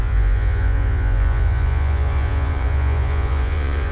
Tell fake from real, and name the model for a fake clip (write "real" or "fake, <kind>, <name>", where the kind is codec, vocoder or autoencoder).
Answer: fake, vocoder, Vocos